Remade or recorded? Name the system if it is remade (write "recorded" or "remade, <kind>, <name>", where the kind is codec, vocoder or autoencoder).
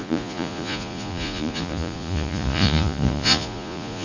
remade, vocoder, Vocos